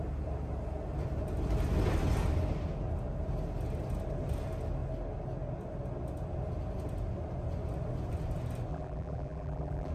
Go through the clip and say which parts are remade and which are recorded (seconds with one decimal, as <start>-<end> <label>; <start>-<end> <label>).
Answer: 0.0-8.7 recorded; 8.7-9.9 remade